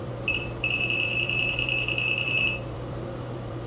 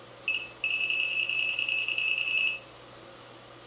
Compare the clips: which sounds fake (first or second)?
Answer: first